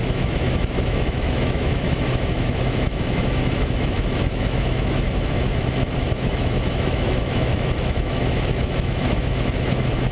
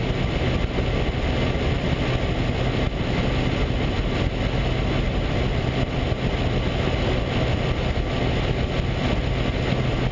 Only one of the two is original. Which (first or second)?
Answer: second